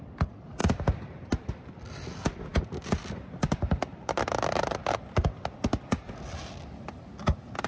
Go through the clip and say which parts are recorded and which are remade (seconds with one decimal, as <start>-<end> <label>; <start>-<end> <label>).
0.0-0.6 recorded; 0.6-1.5 remade; 1.5-2.5 recorded; 2.5-4.4 remade; 4.4-7.7 recorded